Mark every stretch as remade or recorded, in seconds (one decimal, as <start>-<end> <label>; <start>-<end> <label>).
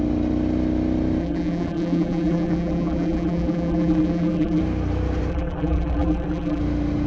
0.0-1.2 recorded; 1.2-4.6 remade; 4.6-5.3 recorded; 5.3-6.6 remade; 6.6-7.1 recorded